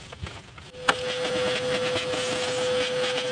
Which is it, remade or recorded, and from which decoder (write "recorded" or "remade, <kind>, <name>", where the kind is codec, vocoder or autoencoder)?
recorded